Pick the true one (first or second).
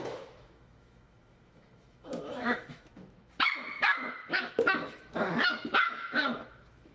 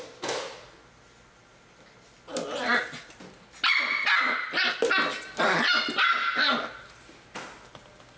second